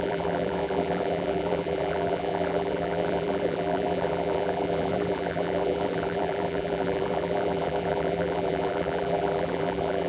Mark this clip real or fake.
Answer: fake